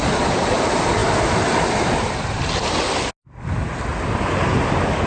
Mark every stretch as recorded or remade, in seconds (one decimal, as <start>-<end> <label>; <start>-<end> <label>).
0.0-5.1 recorded